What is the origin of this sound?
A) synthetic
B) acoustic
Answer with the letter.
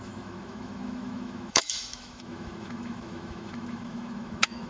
A